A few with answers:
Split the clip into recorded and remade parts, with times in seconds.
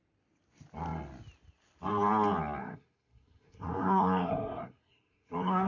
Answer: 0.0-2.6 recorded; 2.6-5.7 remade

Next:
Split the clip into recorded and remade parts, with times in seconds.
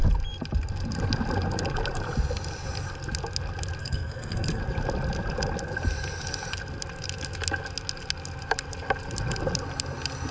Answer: 0.0-3.8 recorded; 3.8-4.6 remade; 4.6-10.3 recorded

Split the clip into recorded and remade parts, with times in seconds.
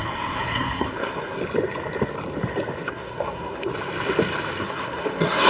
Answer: 0.0-1.4 remade; 1.4-2.9 recorded; 2.9-3.7 remade; 3.7-4.6 recorded; 4.6-5.5 remade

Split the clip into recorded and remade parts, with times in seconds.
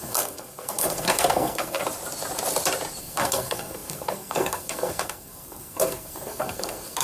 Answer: 0.0-1.8 remade; 1.8-3.0 recorded; 3.0-7.0 remade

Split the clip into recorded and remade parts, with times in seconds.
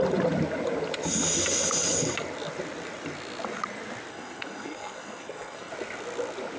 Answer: 0.0-4.1 recorded; 4.1-5.7 remade; 5.7-6.6 recorded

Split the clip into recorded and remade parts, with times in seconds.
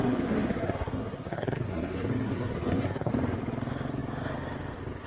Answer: 0.0-3.1 remade; 3.1-5.1 recorded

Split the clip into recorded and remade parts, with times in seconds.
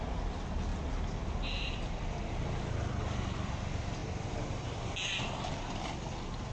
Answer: 0.0-6.5 recorded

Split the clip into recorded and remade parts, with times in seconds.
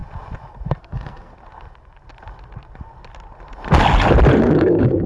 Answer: 0.0-0.8 recorded; 0.8-1.3 remade; 1.3-4.4 recorded; 4.4-5.1 remade